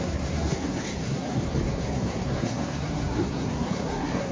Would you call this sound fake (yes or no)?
yes